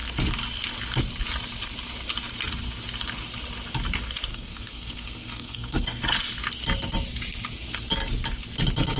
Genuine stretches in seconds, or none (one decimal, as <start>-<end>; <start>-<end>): 0.0-4.3; 6.0-9.0